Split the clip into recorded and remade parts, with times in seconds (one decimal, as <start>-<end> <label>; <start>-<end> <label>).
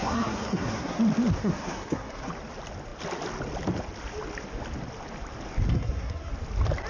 0.0-1.0 remade; 1.0-1.4 recorded; 1.4-2.3 remade; 2.3-5.7 recorded; 5.7-6.3 remade; 6.3-6.9 recorded